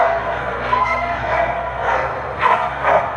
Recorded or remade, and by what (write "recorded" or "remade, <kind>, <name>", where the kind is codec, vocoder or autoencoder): remade, codec, SNAC